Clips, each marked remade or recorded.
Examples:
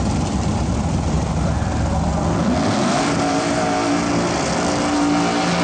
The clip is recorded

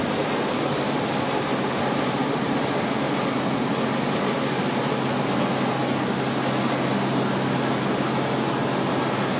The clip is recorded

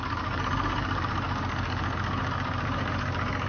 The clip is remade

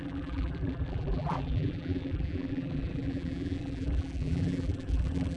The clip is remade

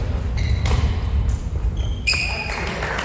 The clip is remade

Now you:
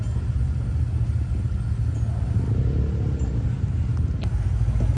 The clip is recorded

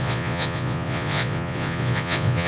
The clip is remade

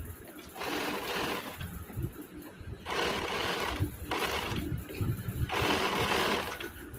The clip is recorded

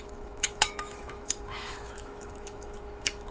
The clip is remade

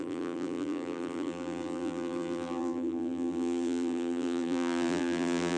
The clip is remade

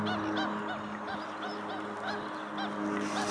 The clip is recorded